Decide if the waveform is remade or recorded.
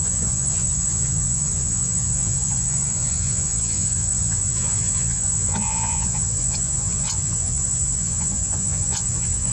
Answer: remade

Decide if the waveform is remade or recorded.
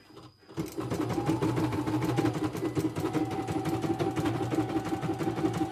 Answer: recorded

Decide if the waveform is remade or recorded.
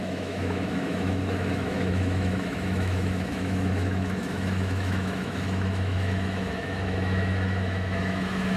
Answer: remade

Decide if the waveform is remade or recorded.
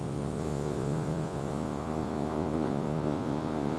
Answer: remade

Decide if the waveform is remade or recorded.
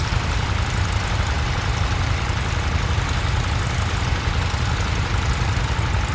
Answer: recorded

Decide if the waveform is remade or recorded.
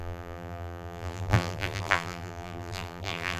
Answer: remade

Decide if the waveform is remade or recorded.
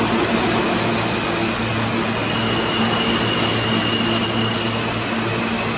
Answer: recorded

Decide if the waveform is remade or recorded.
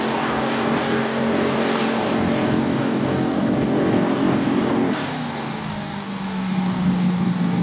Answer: remade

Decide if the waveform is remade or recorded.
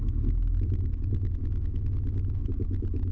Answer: recorded